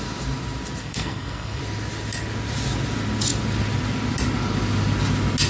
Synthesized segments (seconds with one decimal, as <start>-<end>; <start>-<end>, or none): 0.8-1.6